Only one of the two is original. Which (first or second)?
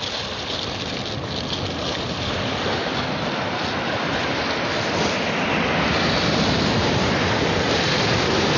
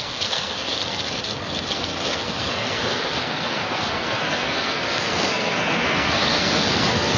first